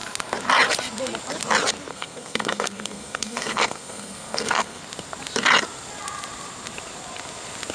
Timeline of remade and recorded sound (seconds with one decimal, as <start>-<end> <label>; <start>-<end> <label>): 0.0-1.9 recorded; 1.9-4.8 remade; 4.8-7.7 recorded